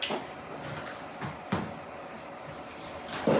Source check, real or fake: real